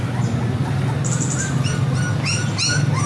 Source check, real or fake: real